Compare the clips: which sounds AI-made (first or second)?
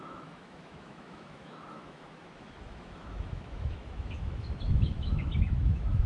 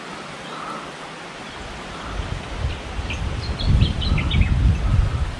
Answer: first